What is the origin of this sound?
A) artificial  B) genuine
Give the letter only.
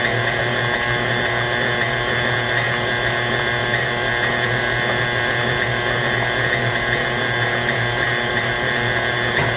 B